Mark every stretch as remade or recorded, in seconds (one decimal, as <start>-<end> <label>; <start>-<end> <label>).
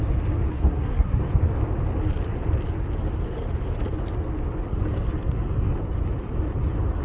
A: 0.0-0.5 recorded; 0.5-1.2 remade; 1.2-7.0 recorded